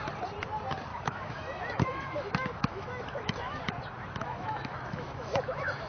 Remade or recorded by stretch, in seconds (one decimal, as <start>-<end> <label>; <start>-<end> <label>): 0.0-0.9 recorded; 0.9-3.6 remade; 3.6-4.2 recorded; 4.2-5.9 remade